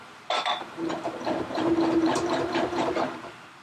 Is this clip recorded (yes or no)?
no